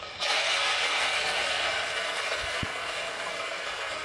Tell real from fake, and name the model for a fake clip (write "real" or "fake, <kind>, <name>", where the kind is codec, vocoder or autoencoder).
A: fake, codec, SNAC